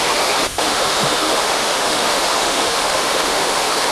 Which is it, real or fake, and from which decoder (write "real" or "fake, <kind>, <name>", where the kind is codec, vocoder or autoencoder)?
fake, autoencoder, DAC-VAE